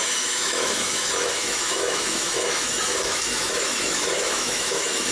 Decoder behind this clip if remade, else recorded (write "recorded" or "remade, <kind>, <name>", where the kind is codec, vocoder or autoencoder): remade, autoencoder, DAC-VAE